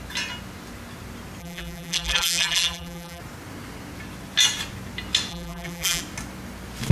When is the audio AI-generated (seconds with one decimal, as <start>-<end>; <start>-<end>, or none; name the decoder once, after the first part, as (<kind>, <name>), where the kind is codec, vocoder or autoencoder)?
1.4-3.2 (vocoder, BigVGAN v2); 5.3-6.0